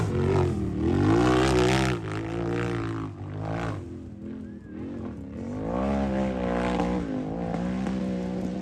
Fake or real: real